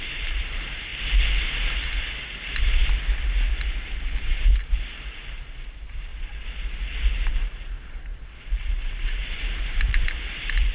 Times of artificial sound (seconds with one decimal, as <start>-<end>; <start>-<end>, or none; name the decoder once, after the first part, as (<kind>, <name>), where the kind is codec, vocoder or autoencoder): 0.0-0.9 (vocoder, BigVGAN v2); 1.5-2.8; 4.0-6.1; 7.1-10.7